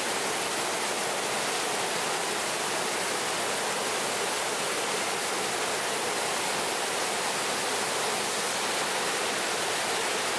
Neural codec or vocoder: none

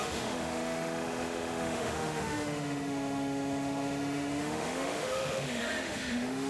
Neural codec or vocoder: autoencoder, DAC-VAE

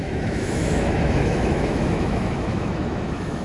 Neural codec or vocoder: autoencoder, DAC-VAE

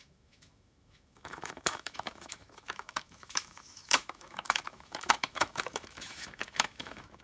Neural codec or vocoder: autoencoder, DAC-VAE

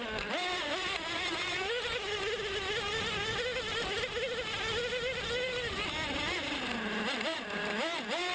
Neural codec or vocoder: none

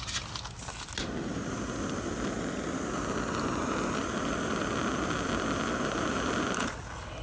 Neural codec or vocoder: none